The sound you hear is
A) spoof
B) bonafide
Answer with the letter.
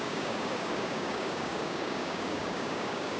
A